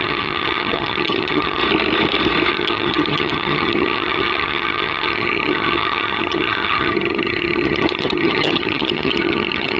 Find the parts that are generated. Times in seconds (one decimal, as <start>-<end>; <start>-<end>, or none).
0.0-1.6; 2.5-9.8